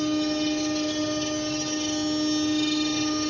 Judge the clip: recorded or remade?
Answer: recorded